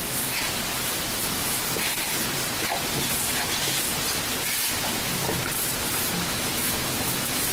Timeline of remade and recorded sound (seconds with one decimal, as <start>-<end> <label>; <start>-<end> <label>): 0.0-0.4 remade; 0.4-1.2 recorded; 1.2-1.6 remade; 1.6-6.1 recorded; 6.1-7.5 remade